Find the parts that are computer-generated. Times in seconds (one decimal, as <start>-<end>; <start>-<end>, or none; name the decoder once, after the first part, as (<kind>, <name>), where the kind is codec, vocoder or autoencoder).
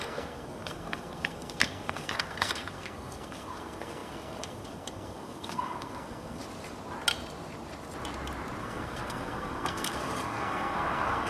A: 0.0-6.4 (codec, SNAC); 8.6-11.3